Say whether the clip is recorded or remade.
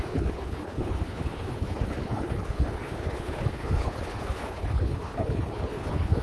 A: remade